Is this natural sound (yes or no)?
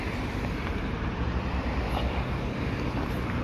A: no